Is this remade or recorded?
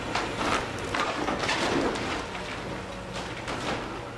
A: remade